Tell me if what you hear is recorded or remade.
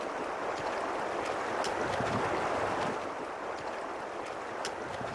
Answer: recorded